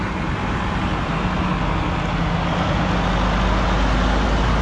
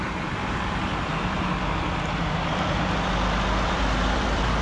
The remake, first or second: second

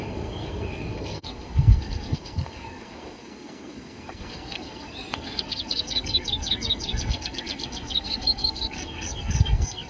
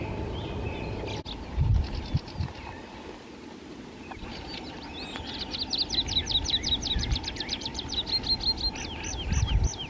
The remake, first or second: first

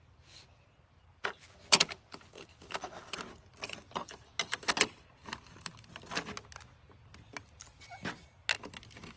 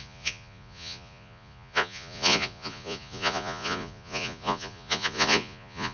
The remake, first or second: second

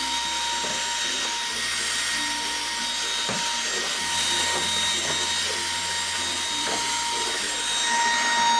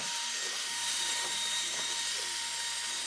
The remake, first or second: second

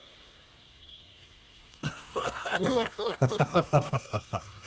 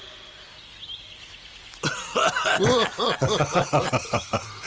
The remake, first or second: first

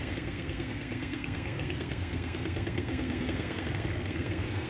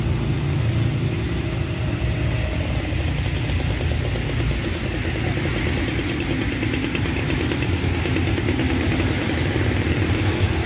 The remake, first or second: first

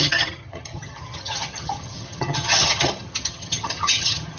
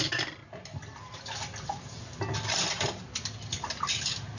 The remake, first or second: first